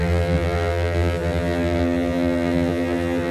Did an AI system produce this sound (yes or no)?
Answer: yes